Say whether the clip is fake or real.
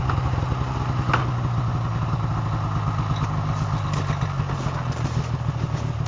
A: real